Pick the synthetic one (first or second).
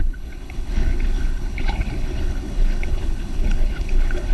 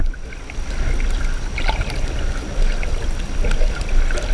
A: first